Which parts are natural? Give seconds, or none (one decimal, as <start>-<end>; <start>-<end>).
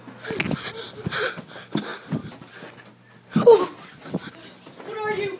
0.0-5.4